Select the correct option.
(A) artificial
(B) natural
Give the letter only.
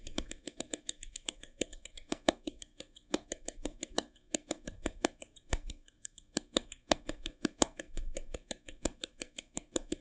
A